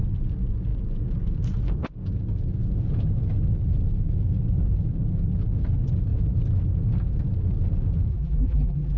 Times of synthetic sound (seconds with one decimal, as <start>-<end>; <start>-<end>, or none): 8.1-9.0